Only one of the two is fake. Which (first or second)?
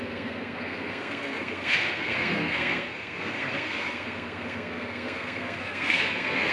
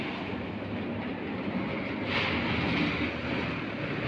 first